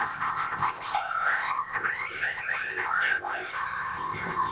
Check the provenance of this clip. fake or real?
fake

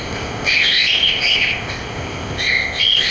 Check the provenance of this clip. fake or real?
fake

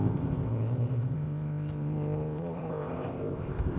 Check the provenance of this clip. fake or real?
fake